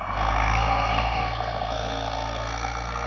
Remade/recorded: remade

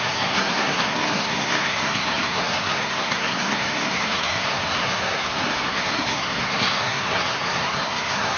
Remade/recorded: remade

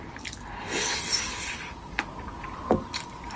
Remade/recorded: recorded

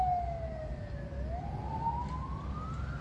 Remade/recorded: recorded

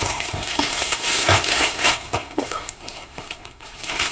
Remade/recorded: remade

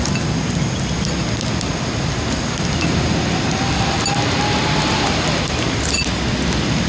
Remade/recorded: recorded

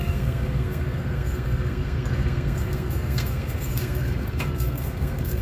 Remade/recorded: remade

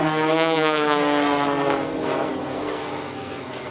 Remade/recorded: remade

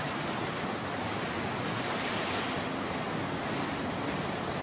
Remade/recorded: recorded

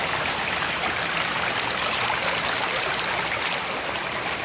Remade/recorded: recorded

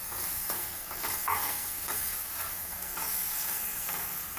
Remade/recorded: remade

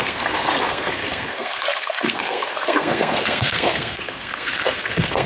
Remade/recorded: remade